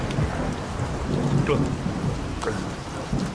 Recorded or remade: recorded